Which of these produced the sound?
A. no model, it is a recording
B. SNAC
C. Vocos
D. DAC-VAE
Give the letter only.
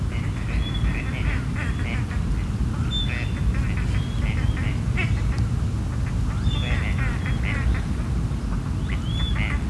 A